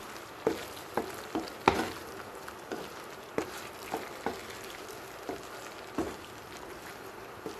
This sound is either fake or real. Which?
real